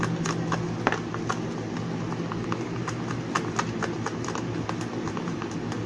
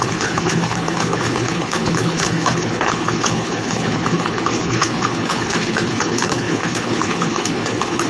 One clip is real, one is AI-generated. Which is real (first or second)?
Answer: first